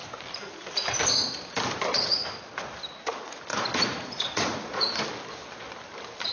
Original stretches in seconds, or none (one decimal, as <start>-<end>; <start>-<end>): 0.0-3.5; 5.0-6.3